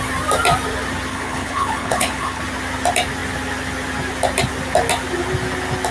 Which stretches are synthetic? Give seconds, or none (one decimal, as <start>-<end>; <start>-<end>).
1.1-2.4